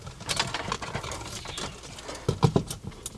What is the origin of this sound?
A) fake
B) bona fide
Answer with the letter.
B